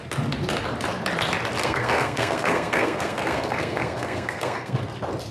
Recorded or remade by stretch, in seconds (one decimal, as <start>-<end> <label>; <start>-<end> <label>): 0.0-1.6 recorded; 1.6-4.8 remade; 4.8-5.3 recorded